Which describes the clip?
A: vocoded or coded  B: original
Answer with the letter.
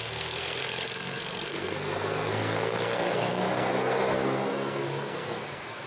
A